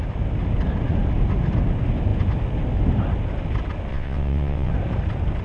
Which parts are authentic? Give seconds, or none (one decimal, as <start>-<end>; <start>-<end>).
0.0-3.9; 4.7-5.4